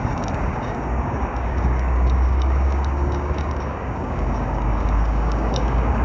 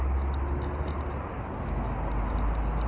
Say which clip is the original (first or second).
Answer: second